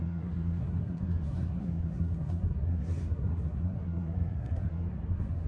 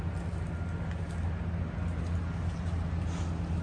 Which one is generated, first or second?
first